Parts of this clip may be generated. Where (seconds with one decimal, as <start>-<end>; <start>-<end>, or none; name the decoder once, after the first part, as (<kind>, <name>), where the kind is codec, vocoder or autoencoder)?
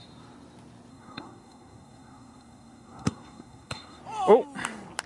0.9-4.0 (codec, SNAC)